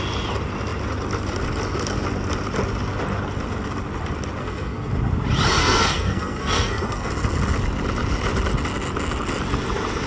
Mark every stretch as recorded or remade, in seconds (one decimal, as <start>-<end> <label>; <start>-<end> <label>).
0.0-4.4 recorded; 4.4-4.9 remade; 4.9-5.6 recorded; 5.6-7.1 remade; 7.1-10.1 recorded